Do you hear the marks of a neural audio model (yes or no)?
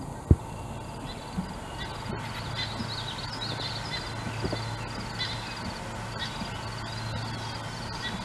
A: no